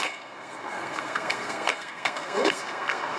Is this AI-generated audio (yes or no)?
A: yes